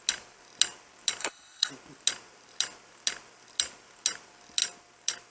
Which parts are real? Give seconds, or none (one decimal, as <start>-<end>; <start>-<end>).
0.0-1.2; 1.7-5.3